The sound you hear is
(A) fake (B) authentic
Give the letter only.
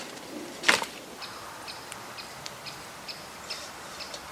A